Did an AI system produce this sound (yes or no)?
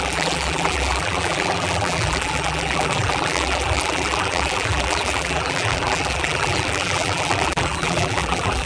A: yes